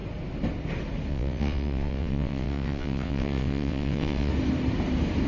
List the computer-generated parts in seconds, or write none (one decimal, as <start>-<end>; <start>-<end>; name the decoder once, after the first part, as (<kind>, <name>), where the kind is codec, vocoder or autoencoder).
1.1-4.3 (vocoder, WaveNeXt)